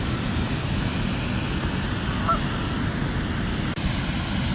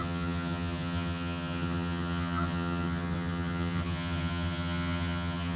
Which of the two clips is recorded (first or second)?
first